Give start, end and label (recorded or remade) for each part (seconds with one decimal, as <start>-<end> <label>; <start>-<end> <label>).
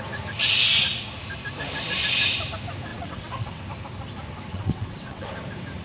0.0-2.9 recorded; 2.9-3.6 remade; 3.6-4.5 recorded; 4.5-5.3 remade; 5.3-5.8 recorded